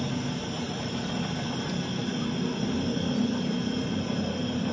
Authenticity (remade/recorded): recorded